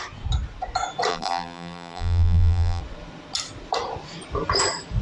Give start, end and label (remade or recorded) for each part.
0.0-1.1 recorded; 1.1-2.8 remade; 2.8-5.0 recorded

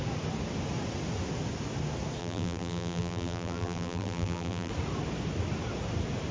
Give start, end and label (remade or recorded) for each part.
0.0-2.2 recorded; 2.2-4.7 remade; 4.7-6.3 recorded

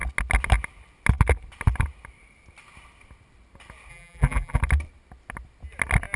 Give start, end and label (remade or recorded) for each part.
0.0-3.9 recorded; 3.9-4.6 remade; 4.6-6.2 recorded

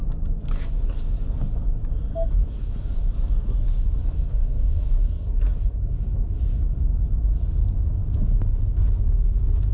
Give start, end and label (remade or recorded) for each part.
0.0-2.4 recorded; 2.4-3.3 remade; 3.3-4.0 recorded; 4.0-6.4 remade; 6.4-9.7 recorded